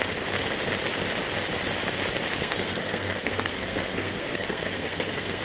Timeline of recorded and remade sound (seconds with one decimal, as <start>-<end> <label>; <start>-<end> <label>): 0.0-2.4 recorded; 2.4-5.4 remade